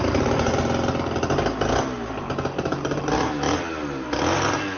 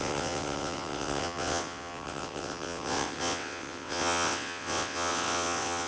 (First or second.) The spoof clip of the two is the second